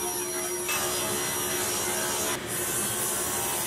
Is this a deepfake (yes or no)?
no